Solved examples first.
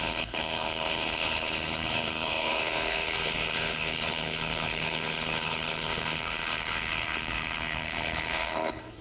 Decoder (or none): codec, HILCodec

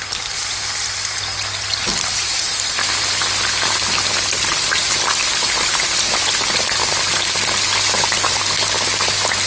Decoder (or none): none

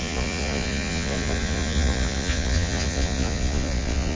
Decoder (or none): vocoder, Vocos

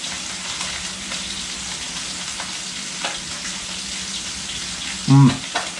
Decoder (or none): none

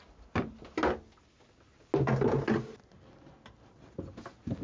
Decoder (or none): none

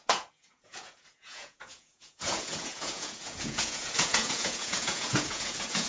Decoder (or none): vocoder, Vocos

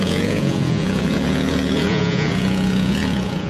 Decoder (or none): vocoder, Vocos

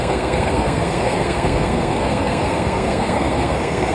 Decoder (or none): codec, SNAC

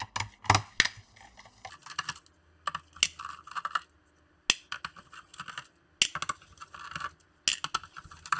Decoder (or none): none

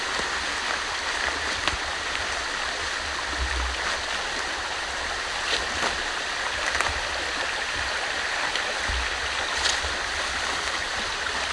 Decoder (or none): none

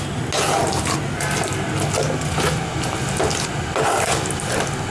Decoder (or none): none